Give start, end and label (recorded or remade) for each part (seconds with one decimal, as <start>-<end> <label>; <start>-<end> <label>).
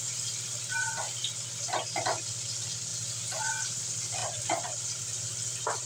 0.0-5.9 recorded